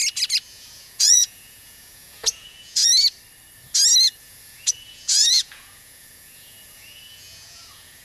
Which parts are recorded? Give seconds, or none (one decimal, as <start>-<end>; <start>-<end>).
0.0-0.5; 2.9-4.2